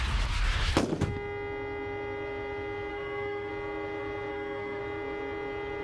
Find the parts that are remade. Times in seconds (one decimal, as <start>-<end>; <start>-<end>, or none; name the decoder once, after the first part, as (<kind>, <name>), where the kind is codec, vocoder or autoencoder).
2.9-3.5 (codec, SNAC); 4.3-4.8